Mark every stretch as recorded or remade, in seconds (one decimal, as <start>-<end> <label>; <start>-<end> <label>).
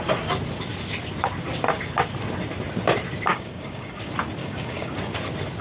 0.0-3.3 recorded; 3.3-4.0 remade; 4.0-4.4 recorded; 4.4-5.0 remade; 5.0-5.6 recorded